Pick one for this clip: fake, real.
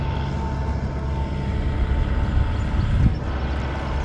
real